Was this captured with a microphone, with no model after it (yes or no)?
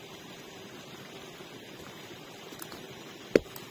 yes